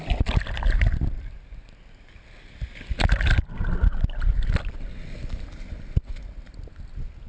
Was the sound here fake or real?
real